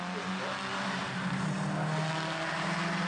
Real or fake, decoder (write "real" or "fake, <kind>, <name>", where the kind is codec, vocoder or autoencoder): real